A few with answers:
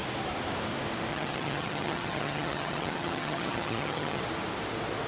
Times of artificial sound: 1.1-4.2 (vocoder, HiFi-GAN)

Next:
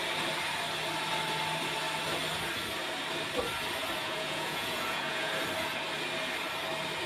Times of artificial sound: 4.0-5.3 (vocoder, Vocos)

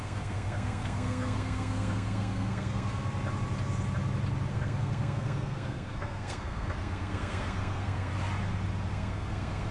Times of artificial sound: 0.0-3.0 (codec, SNAC); 4.5-8.1; 8.9-9.7

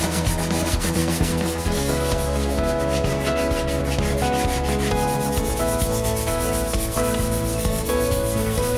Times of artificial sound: 0.0-3.8 (codec, SNAC); 5.6-8.8

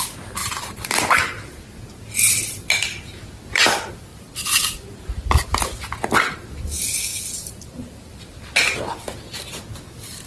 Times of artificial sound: 0.4-1.8 (vocoder, BigVGAN v2); 4.1-5.8; 7.1-8.8

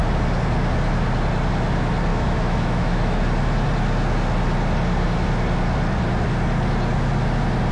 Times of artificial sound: 2.1-3.2 (autoencoder, DAC-VAE)

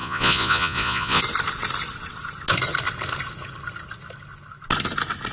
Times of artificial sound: 0.0-1.2 (vocoder, Vocos)

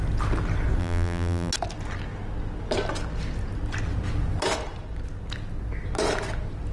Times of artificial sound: 0.8-1.5 (vocoder, BigVGAN v2)